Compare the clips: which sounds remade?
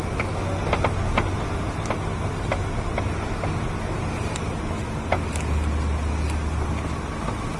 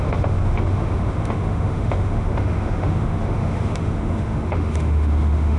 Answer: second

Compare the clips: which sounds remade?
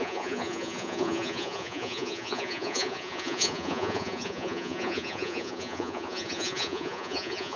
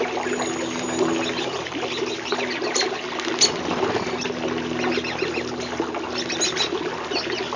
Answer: first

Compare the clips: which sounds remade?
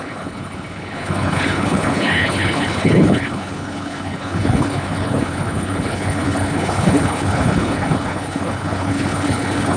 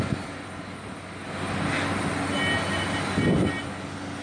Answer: first